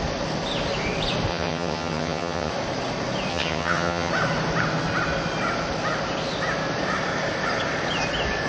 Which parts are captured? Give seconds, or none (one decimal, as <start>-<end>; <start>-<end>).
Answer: 0.0-1.3; 2.5-3.3; 4.1-8.5